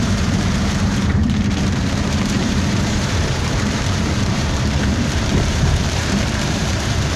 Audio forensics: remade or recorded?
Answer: remade